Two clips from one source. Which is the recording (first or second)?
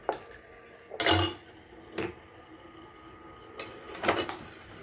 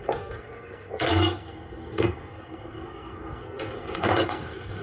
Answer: first